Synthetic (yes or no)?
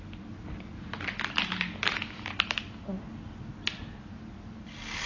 no